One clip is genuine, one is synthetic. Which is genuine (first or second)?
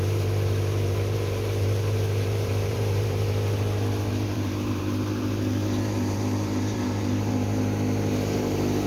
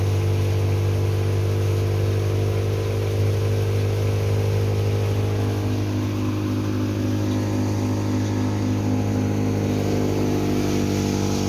second